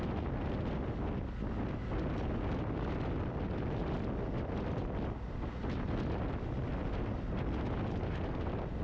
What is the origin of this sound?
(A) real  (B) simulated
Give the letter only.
A